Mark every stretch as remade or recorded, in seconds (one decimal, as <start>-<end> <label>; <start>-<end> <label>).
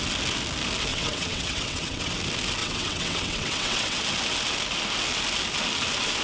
0.0-0.9 recorded; 0.9-2.1 remade; 2.1-2.6 recorded; 2.6-4.0 remade; 4.0-6.2 recorded